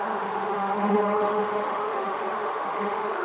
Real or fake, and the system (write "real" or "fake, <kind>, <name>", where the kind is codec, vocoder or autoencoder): fake, autoencoder, DAC-VAE